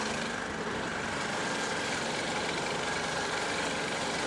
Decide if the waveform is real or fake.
real